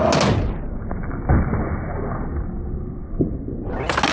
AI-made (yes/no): no